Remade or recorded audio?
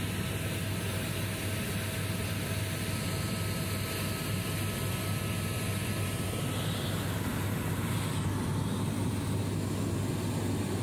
recorded